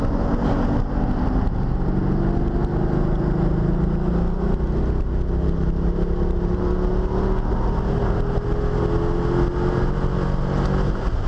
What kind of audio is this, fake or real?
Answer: real